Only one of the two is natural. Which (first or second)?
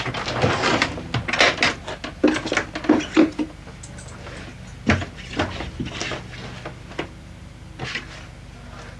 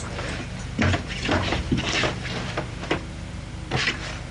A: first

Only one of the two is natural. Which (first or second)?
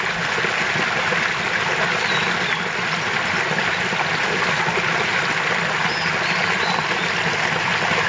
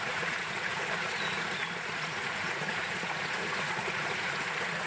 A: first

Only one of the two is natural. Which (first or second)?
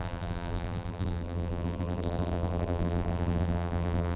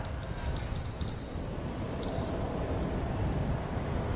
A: second